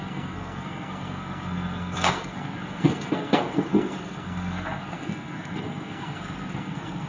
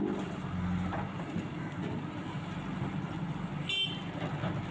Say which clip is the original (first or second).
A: second